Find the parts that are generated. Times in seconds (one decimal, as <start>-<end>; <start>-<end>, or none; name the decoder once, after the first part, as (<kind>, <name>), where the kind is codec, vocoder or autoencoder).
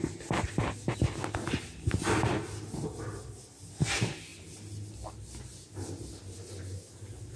none